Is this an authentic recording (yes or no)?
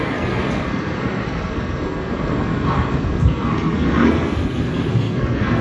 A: no